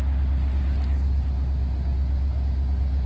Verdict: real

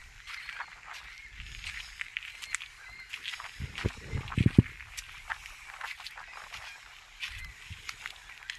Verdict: real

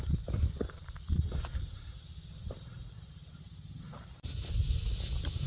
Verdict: real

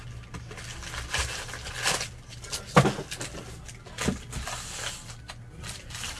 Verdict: real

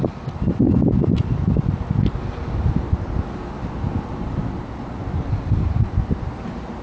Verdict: real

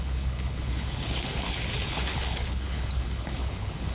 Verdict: fake